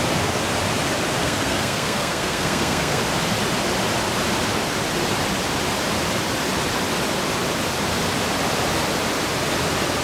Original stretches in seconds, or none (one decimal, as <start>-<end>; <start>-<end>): 0.0-1.2; 3.0-10.0